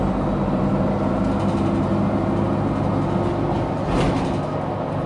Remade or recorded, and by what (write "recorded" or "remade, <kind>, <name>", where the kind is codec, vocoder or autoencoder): recorded